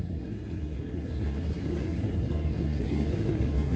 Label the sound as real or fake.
fake